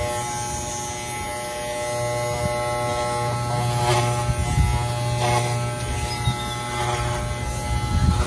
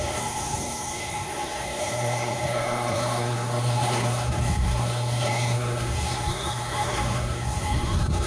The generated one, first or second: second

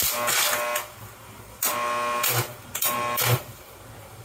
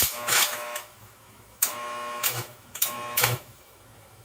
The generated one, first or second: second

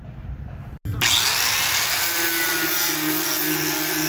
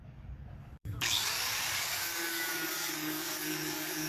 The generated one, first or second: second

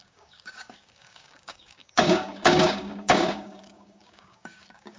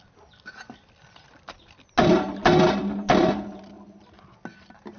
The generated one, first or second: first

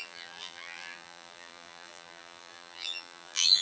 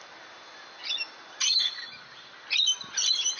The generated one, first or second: first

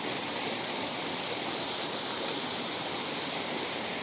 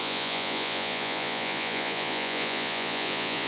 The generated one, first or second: second